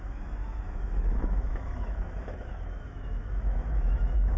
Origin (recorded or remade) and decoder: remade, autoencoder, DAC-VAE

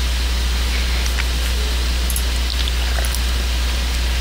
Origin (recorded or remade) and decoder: recorded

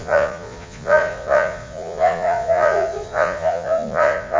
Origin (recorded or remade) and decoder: remade, vocoder, Vocos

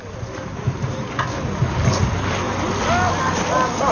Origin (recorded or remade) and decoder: recorded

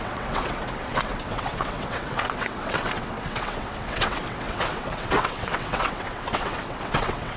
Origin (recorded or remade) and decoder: remade, vocoder, WaveNeXt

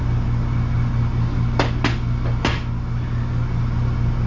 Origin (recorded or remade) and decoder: recorded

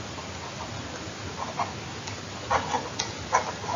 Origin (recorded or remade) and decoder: recorded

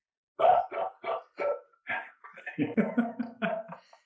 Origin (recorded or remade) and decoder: recorded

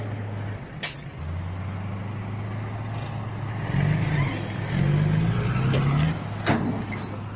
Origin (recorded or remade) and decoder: recorded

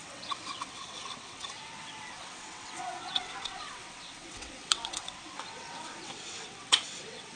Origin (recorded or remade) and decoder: remade, vocoder, WaveNeXt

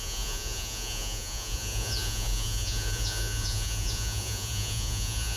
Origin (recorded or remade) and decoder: remade, vocoder, Vocos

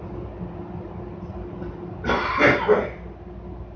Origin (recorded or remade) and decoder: recorded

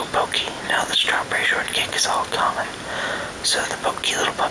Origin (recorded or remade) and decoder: recorded